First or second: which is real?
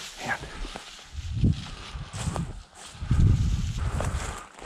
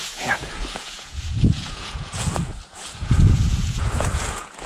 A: first